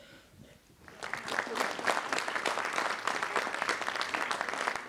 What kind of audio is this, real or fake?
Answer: real